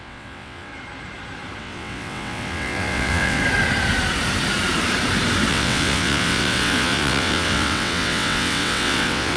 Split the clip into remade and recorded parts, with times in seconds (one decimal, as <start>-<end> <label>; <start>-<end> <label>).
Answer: 0.0-0.7 remade; 0.7-1.6 recorded; 1.6-3.4 remade; 3.4-5.5 recorded; 5.5-9.4 remade